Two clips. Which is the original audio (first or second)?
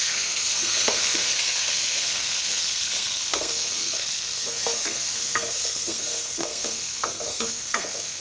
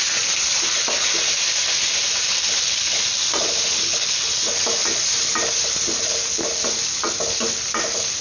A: second